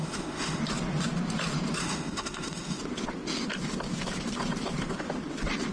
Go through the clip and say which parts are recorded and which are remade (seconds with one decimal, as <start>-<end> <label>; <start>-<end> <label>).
0.0-0.6 remade; 0.6-1.8 recorded; 1.8-2.8 remade; 2.8-5.7 recorded